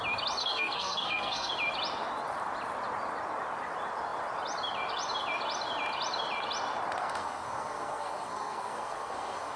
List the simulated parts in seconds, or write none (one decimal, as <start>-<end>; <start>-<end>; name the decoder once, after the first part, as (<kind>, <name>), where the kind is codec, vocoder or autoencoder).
0.4-1.5 (codec, SNAC); 7.0-9.6